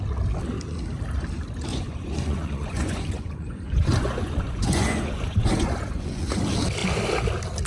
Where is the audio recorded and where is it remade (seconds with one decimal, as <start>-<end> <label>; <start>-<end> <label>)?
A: 0.0-1.7 recorded; 1.7-6.3 remade; 6.3-7.7 recorded